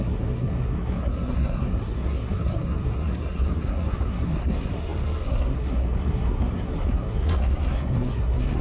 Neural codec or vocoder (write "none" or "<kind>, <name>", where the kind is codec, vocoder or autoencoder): codec, SNAC